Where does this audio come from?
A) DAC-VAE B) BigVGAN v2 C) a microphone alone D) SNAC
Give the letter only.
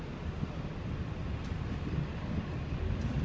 C